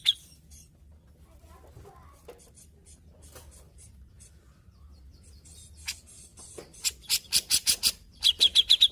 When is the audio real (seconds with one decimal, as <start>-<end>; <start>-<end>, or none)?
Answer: 0.0-6.3

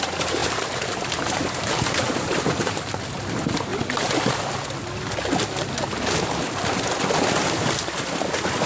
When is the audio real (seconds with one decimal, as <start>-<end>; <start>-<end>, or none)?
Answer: 0.0-0.4; 2.9-8.7

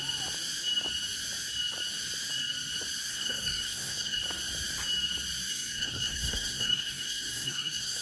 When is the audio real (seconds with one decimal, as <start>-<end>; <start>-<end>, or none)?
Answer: 0.0-3.1; 4.2-5.5